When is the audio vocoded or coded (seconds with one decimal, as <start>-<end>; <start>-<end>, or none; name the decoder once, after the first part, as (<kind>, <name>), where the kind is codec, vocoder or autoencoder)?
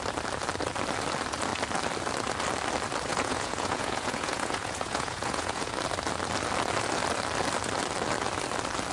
3.1-5.7 (vocoder, Vocos)